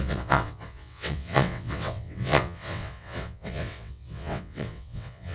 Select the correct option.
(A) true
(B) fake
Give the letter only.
B